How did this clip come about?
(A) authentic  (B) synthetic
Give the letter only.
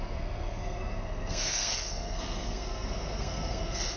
B